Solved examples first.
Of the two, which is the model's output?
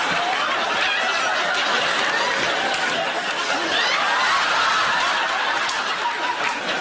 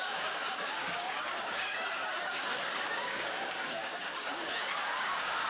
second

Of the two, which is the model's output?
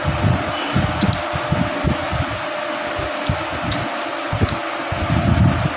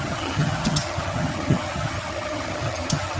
second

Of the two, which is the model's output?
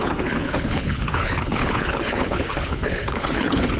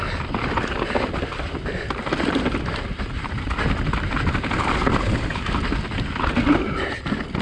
first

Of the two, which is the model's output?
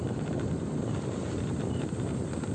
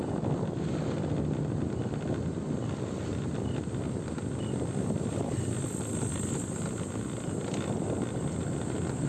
first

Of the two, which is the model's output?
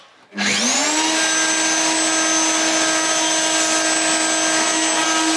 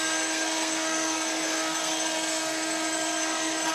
second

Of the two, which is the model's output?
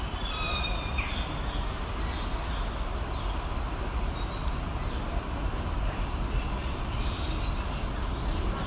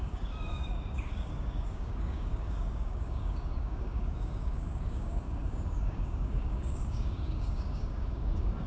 second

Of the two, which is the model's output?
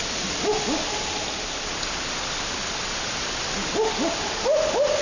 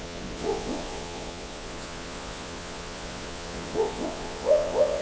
second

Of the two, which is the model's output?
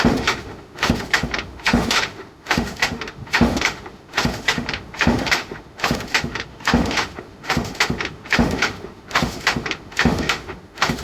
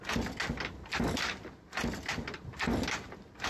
first